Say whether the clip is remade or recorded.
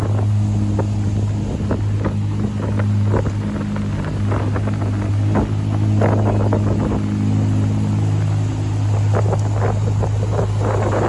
recorded